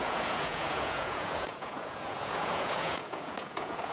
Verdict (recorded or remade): remade